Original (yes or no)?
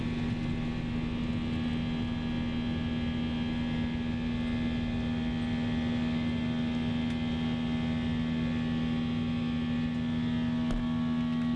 yes